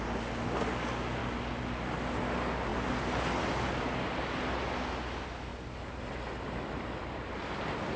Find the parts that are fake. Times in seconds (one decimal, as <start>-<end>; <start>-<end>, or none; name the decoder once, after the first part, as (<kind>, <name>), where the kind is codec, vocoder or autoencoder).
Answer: none